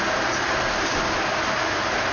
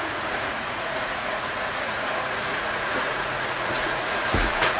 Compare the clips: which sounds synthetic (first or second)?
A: second